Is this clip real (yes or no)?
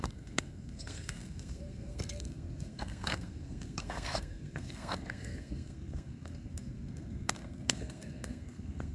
no